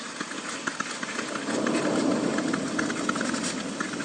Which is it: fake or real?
real